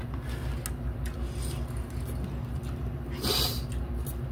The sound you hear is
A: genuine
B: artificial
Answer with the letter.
A